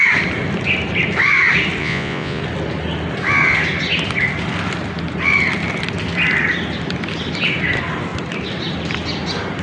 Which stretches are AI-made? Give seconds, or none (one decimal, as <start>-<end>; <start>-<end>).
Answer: 1.8-2.4